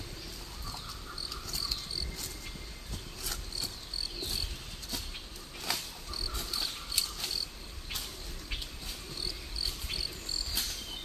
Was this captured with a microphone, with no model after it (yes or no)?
yes